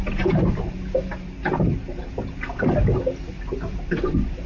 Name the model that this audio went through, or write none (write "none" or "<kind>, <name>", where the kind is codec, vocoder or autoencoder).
none